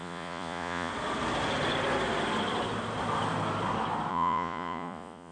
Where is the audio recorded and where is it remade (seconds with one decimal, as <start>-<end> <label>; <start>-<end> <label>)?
0.0-0.9 remade; 0.9-4.1 recorded; 4.1-5.3 remade

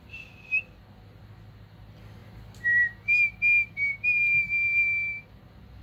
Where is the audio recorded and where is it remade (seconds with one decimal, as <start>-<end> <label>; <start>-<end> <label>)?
0.0-5.8 recorded